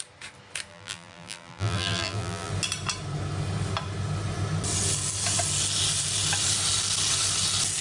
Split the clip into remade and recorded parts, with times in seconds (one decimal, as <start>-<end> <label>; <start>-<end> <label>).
0.0-0.7 recorded; 0.7-2.5 remade; 2.5-7.8 recorded